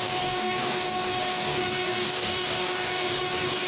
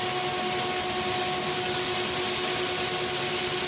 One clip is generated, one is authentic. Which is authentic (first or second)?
second